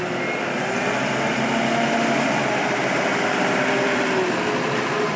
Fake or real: real